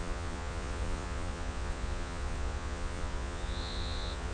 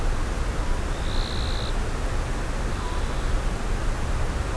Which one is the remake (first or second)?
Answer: first